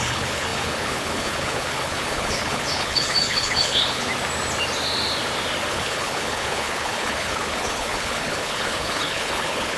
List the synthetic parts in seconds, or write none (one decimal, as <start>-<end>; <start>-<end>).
0.0-4.1; 5.7-9.8